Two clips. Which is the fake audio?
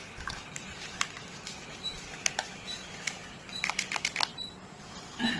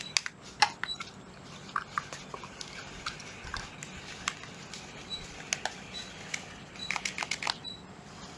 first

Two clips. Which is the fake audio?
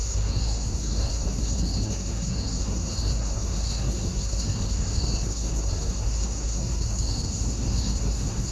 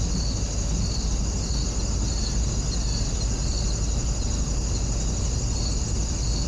first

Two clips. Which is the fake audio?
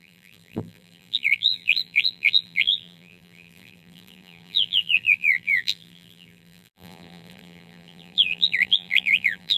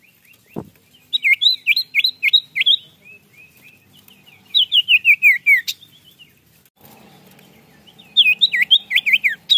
first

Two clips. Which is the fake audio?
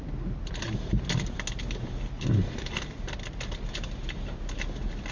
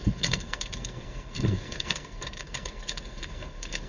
second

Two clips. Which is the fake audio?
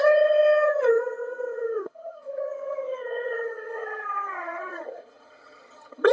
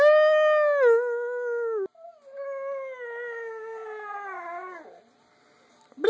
first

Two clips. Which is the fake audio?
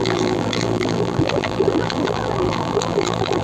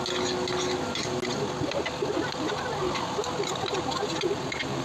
first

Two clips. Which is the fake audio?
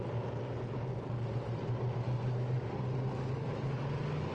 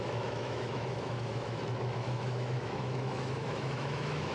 second